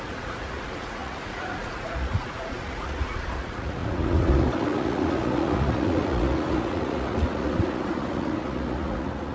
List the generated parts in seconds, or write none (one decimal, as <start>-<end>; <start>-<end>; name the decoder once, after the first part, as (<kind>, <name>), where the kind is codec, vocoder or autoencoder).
0.0-9.3 (vocoder, Vocos)